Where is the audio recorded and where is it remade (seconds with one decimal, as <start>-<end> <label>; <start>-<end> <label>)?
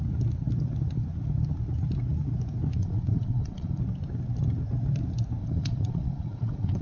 0.0-2.8 recorded; 2.8-3.8 remade; 3.8-5.4 recorded; 5.4-6.8 remade